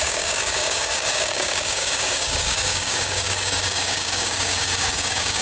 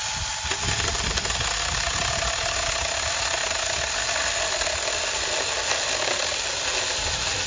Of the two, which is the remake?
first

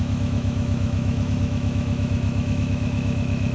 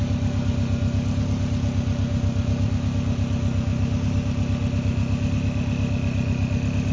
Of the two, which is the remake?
first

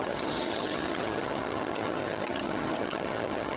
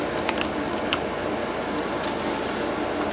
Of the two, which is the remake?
first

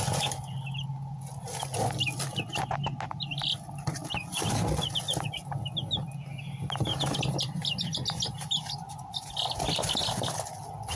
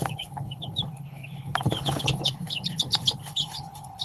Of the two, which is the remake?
second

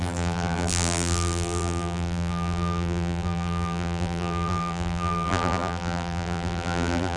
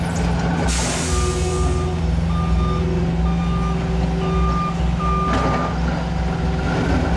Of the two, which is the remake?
first